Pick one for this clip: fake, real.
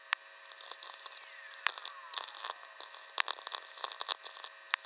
real